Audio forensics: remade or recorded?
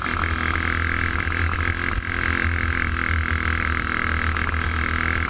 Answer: recorded